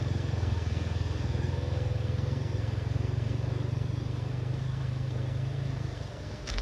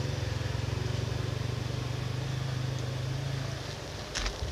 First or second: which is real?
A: second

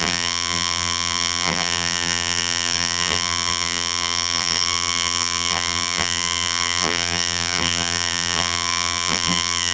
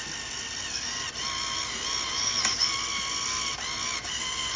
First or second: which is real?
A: second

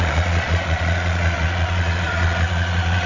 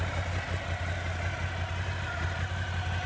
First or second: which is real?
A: second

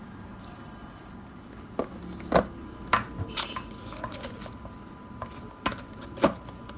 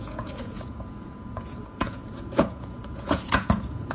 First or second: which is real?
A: first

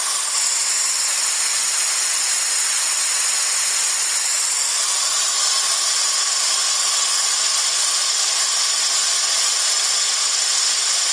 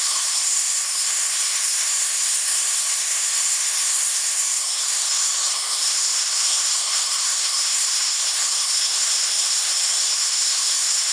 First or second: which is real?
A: first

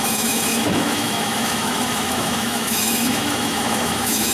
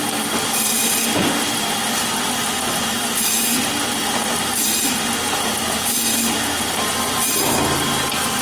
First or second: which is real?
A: second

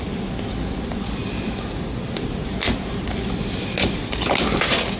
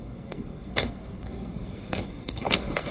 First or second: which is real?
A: first